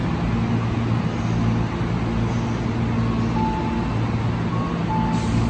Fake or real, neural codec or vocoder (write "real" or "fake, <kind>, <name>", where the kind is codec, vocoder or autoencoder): real